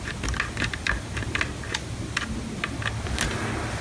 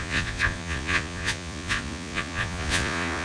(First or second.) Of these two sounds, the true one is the first